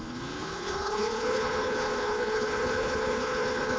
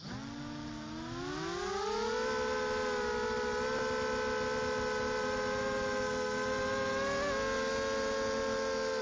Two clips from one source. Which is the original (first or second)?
second